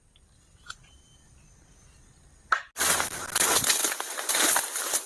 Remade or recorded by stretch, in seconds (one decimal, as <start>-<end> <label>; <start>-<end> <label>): 0.0-5.1 recorded